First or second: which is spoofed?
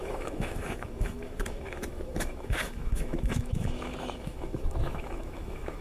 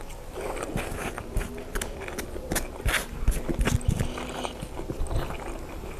first